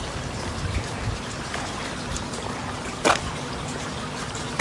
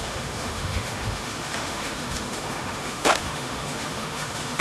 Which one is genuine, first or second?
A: first